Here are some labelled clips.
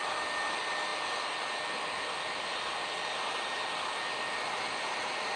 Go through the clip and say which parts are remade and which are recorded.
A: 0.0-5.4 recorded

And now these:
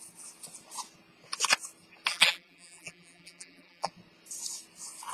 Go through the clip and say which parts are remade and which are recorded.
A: 0.0-2.1 recorded; 2.1-3.9 remade; 3.9-5.1 recorded

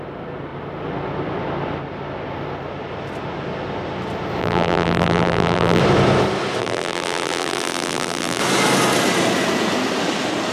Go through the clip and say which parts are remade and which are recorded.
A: 0.0-4.4 recorded; 4.4-5.8 remade; 5.8-6.6 recorded; 6.6-8.4 remade; 8.4-10.5 recorded

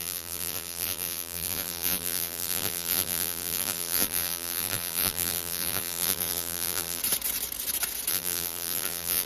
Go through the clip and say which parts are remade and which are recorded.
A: 0.0-7.0 remade; 7.0-8.1 recorded; 8.1-9.3 remade

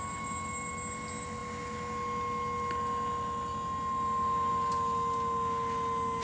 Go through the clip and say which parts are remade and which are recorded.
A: 0.0-6.2 recorded

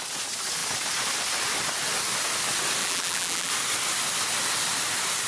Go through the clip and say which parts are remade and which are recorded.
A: 0.0-2.8 recorded; 2.8-3.5 remade; 3.5-5.3 recorded